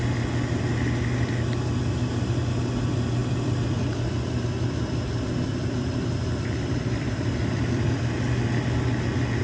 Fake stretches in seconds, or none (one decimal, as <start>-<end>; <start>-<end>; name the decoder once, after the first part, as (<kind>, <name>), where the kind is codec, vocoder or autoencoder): 3.2-8.0 (vocoder, BigVGAN v2)

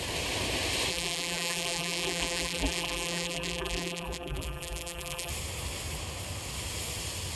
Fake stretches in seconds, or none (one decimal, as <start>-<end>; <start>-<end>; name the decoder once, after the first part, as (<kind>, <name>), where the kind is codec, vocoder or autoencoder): 0.9-5.3 (vocoder, BigVGAN v2)

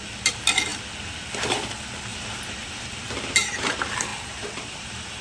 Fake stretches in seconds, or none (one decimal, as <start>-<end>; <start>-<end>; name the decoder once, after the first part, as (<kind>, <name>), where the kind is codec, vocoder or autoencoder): 2.1-3.3 (vocoder, BigVGAN v2); 4.1-5.2